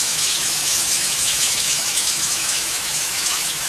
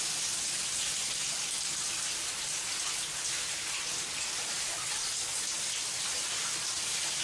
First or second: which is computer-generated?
first